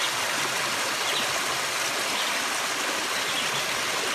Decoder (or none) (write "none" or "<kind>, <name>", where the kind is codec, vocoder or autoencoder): none